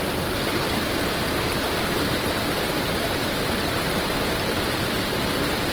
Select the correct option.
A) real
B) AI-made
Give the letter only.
A